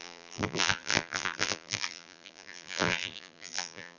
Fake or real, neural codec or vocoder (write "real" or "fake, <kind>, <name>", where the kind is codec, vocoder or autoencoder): fake, vocoder, BigVGAN v2